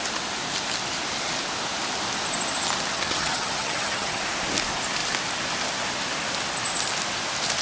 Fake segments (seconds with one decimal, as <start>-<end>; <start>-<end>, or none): 2.9-4.2